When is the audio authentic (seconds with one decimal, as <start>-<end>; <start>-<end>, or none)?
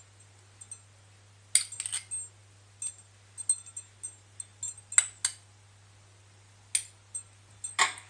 0.0-8.1